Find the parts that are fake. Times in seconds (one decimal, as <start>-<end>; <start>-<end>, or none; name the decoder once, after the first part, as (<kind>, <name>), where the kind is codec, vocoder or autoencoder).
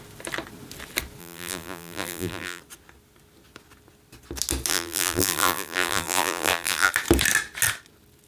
1.2-2.6 (vocoder, BigVGAN v2); 4.7-6.9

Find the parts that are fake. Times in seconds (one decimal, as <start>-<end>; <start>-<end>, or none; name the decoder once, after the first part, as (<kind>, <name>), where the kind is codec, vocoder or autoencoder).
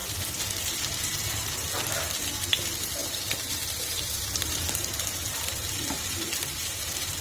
0.0-1.5 (vocoder, BigVGAN v2); 3.0-7.2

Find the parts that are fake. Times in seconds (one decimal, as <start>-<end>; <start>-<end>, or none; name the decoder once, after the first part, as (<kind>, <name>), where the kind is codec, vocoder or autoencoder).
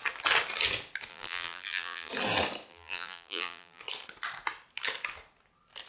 1.1-2.1 (vocoder, BigVGAN v2); 2.7-3.8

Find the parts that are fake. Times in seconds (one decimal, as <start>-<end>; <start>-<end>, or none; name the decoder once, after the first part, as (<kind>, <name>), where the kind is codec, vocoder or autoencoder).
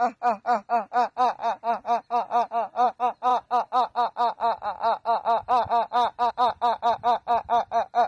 0.0-3.3 (vocoder, BigVGAN v2); 6.3-8.1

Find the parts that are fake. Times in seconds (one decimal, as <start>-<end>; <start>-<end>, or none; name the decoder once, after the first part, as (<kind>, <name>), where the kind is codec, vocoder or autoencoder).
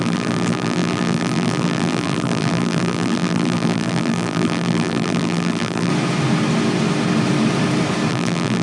0.0-5.9 (vocoder, BigVGAN v2); 8.1-8.6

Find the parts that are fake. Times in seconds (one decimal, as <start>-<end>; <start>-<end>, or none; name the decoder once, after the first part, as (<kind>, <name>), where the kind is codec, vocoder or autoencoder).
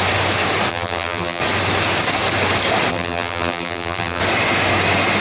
0.7-1.4 (vocoder, BigVGAN v2); 2.9-4.2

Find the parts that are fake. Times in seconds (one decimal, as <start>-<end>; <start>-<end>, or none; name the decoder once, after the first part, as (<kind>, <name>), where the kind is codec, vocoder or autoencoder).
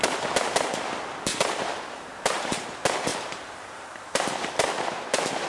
1.3-2.7 (vocoder, BigVGAN v2); 3.1-4.3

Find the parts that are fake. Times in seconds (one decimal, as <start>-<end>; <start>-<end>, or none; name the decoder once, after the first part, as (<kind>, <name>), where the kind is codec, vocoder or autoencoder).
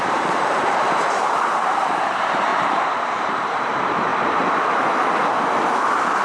0.0-4.1 (vocoder, BigVGAN v2)